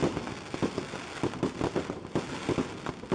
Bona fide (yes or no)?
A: yes